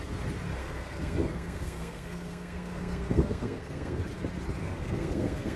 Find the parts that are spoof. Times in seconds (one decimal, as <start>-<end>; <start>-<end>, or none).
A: 0.6-4.0; 4.6-5.6